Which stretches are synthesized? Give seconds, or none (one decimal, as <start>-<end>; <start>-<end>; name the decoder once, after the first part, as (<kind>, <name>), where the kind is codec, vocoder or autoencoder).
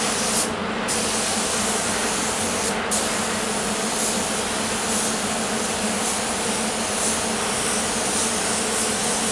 2.0-4.5 (vocoder, BigVGAN v2)